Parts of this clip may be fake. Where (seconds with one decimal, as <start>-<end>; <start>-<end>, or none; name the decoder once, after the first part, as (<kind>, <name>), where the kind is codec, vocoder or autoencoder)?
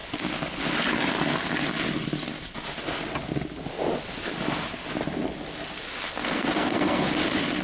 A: 6.2-7.1 (codec, SNAC)